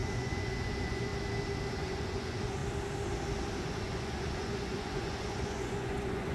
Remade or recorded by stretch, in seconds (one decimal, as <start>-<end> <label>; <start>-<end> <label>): 0.0-1.1 remade; 1.1-1.7 recorded; 1.7-2.6 remade; 2.6-3.6 recorded; 3.6-6.3 remade